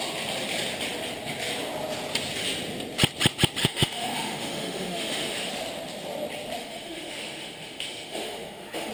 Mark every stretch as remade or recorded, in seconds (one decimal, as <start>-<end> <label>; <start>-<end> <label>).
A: 0.0-3.6 recorded; 3.6-5.5 remade; 5.5-6.6 recorded; 6.6-8.9 remade